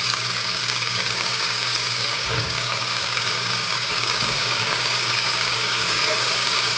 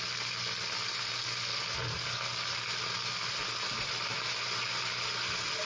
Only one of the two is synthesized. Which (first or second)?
first